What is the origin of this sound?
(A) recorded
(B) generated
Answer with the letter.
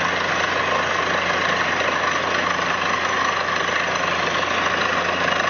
A